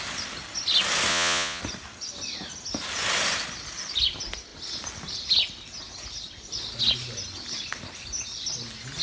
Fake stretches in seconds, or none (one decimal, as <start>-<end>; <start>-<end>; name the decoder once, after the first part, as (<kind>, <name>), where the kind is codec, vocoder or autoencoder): 1.1-1.6 (vocoder, Vocos)